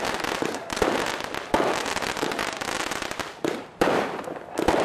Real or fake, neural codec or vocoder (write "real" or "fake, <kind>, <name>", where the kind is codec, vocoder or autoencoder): real